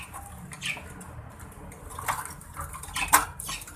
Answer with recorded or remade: recorded